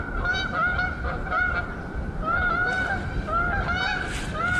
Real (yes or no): yes